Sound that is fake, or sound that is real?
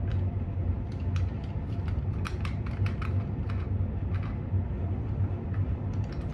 fake